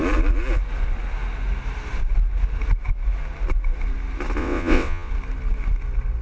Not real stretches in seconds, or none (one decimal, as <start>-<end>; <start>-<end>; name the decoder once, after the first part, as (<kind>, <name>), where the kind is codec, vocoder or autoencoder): 4.4-5.1 (vocoder, WaveNeXt)